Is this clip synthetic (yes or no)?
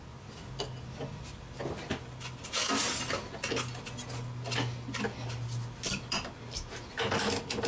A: no